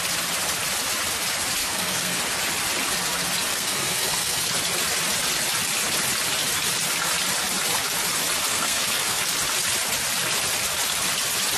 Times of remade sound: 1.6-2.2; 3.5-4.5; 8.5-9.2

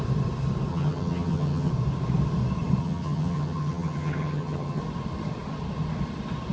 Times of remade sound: 0.7-1.7; 2.8-4.8